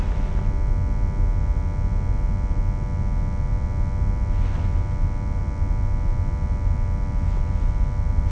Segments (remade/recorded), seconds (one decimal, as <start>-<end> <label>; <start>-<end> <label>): 0.0-8.3 recorded